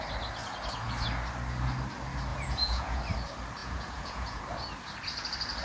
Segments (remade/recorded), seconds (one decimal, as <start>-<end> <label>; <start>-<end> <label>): 0.0-2.3 recorded; 2.3-3.0 remade; 3.0-3.6 recorded; 3.6-4.4 remade; 4.4-5.6 recorded